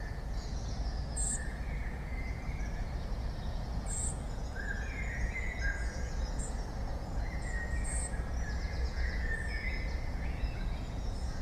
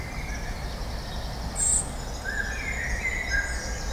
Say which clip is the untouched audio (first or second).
second